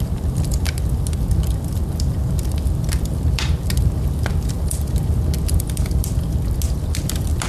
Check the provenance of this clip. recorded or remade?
recorded